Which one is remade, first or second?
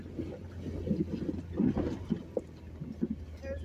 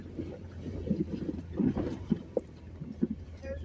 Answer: second